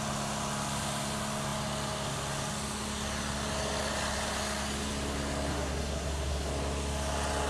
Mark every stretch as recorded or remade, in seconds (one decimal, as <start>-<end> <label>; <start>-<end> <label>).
0.0-5.5 recorded; 5.5-6.5 remade; 6.5-7.5 recorded